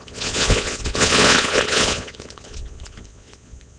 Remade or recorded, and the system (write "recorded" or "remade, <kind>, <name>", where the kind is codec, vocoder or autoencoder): remade, vocoder, Vocos